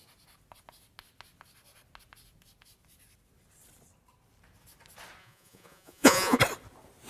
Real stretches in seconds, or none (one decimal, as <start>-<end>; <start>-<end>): 0.0-5.2; 6.4-7.1